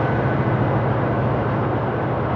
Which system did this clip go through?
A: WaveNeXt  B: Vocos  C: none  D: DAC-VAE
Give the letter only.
C